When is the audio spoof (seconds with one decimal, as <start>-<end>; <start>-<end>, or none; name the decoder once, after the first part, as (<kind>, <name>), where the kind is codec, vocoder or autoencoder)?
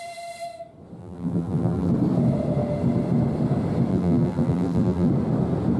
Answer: 1.0-1.9 (vocoder, BigVGAN v2); 3.9-5.1